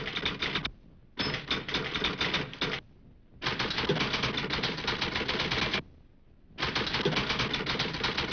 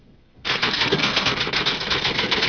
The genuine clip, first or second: first